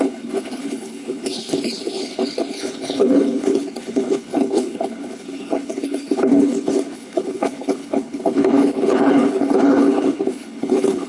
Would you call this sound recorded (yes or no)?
no